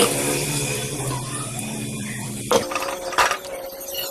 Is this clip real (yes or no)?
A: no